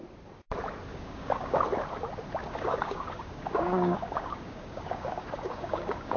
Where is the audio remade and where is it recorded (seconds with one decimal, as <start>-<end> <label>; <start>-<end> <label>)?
0.0-0.9 recorded; 0.9-1.6 remade; 1.6-2.4 recorded; 2.4-6.2 remade